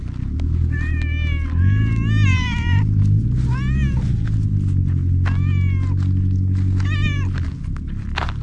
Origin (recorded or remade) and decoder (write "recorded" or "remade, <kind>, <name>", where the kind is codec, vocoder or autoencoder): recorded